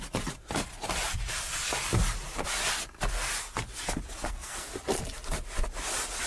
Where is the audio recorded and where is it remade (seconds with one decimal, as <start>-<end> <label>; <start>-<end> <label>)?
0.0-4.2 recorded; 4.2-4.7 remade; 4.7-6.3 recorded